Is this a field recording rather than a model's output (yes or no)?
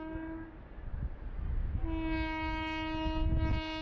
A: yes